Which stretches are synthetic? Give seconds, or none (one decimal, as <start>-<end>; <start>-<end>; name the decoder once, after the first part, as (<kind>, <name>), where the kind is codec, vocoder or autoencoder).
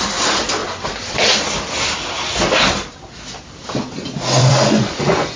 4.4-5.4 (vocoder, Vocos)